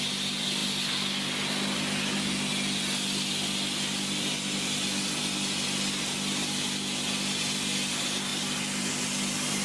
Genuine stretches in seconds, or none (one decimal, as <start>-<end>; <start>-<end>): 0.0-9.6